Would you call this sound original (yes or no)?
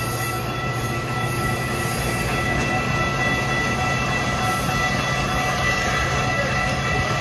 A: yes